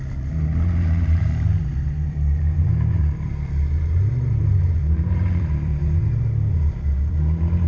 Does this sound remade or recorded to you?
remade